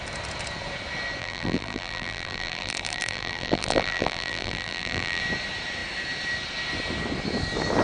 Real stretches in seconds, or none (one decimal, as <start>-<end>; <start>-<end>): 0.0-1.2; 5.2-7.8